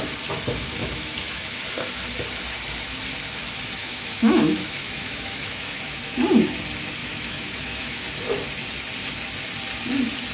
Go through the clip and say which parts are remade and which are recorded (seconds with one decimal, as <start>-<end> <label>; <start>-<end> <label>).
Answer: 0.0-0.8 recorded; 0.8-1.6 remade; 1.6-3.8 recorded; 3.8-6.0 remade; 6.0-7.0 recorded; 7.0-8.0 remade; 8.0-10.3 recorded